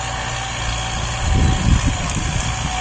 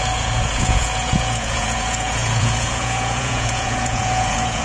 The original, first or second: first